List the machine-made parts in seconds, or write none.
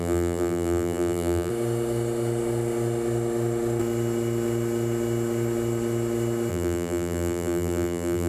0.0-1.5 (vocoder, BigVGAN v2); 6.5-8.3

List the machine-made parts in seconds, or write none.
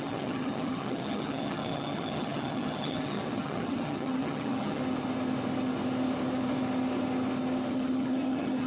0.0-4.8 (vocoder, HiFi-GAN); 7.7-8.7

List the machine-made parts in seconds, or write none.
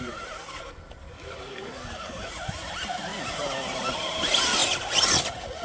1.0-2.3 (codec, DAC)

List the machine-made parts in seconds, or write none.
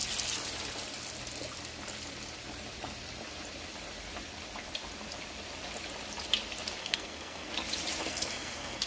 6.8-7.5 (codec, SNAC); 8.0-8.9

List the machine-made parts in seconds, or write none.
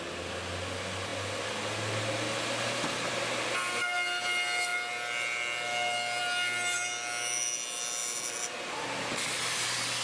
none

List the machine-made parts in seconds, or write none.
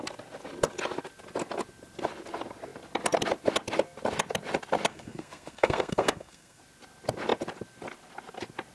4.9-6.6 (codec, SNAC)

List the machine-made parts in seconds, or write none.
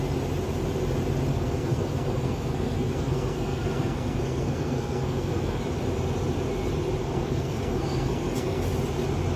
1.3-5.6 (codec, SNAC); 7.0-8.7